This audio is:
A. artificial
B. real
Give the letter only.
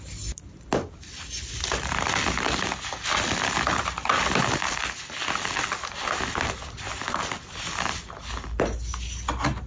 B